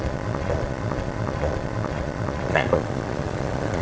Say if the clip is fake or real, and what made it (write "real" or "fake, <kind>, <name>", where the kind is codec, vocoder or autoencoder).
fake, vocoder, Vocos